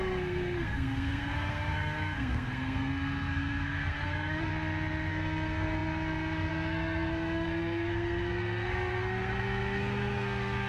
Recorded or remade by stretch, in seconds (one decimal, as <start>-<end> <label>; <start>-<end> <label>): 0.0-4.5 remade; 4.5-5.1 recorded; 5.1-10.7 remade